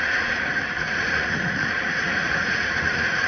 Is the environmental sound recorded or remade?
remade